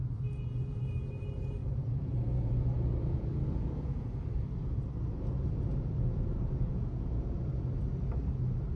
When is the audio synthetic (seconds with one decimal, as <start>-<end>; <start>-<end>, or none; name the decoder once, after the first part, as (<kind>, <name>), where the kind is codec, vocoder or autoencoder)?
0.0-0.9 (vocoder, Vocos); 1.6-4.2; 5.7-7.5